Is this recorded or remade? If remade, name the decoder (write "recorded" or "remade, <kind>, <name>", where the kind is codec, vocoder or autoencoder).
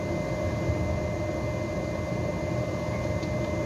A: recorded